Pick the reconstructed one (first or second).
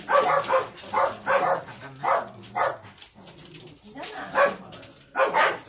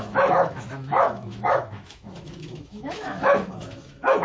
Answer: second